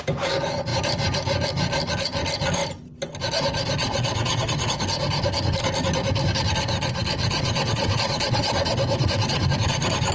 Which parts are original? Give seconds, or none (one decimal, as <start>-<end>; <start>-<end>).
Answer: 0.0-3.8; 4.7-7.4; 9.4-10.1